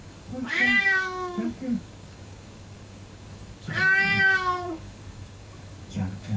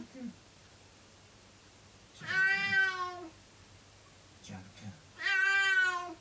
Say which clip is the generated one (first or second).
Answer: first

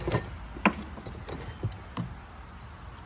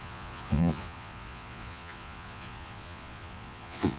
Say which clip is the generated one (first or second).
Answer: second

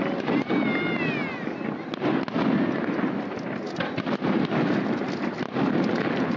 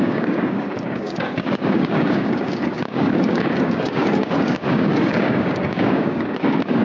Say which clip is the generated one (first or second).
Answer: second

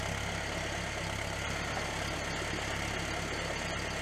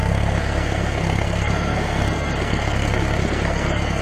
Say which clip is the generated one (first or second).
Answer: second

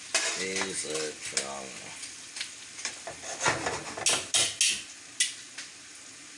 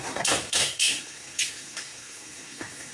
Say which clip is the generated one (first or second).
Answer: second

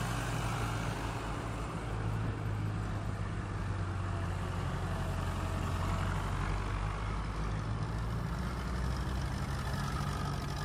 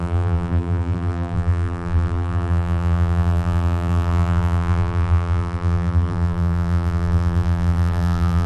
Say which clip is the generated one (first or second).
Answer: second